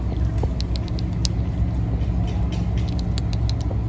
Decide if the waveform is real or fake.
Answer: real